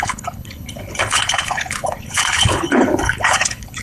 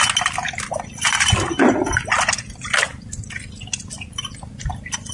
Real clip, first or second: second